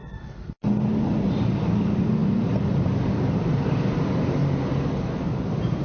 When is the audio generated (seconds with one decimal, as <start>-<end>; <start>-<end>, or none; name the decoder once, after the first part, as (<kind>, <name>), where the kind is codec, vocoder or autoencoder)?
1.8-2.2 (vocoder, BigVGAN v2); 2.8-4.4; 4.9-5.8